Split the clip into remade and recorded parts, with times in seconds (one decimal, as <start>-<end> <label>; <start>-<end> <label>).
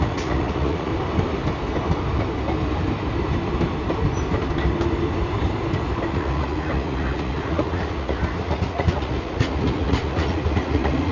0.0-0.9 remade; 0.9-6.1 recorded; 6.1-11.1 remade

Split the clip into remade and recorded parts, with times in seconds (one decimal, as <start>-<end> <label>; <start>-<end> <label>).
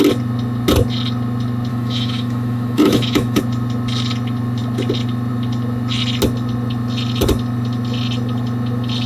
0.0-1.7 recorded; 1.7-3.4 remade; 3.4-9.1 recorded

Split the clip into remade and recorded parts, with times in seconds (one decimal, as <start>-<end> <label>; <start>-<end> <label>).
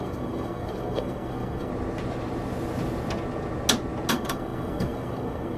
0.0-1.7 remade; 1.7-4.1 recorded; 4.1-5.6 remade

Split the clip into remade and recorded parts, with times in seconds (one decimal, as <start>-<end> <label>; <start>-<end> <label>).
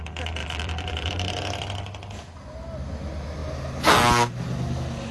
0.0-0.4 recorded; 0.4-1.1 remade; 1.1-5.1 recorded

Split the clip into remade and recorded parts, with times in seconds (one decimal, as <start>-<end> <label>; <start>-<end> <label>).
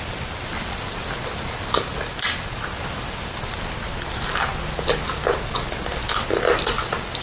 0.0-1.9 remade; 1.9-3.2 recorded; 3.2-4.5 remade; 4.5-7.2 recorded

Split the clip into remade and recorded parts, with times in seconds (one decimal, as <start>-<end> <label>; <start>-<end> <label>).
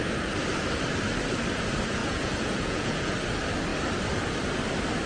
0.0-2.0 recorded; 2.0-3.1 remade; 3.1-5.1 recorded